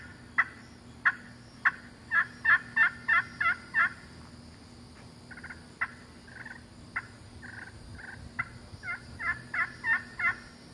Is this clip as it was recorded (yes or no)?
yes